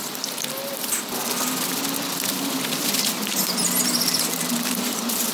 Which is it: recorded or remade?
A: remade